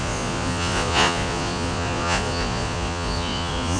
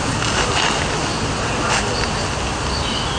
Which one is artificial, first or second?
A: first